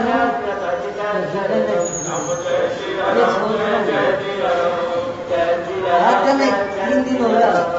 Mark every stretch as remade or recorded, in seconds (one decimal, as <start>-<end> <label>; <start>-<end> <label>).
0.0-2.4 recorded; 2.4-4.1 remade; 4.1-4.7 recorded; 4.7-6.9 remade; 6.9-7.8 recorded

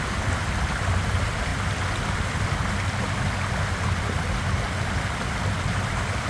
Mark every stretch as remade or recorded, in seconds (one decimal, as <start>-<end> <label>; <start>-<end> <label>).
0.0-6.3 recorded